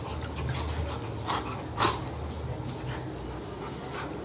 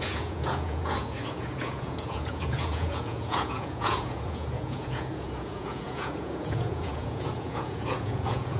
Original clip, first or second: first